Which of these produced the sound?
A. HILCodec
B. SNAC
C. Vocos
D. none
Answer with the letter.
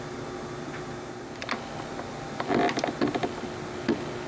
D